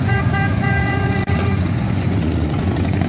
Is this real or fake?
fake